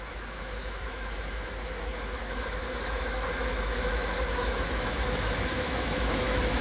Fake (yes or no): yes